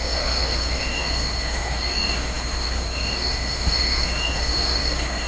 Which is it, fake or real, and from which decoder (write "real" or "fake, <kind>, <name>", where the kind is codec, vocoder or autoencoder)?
fake, autoencoder, DAC-VAE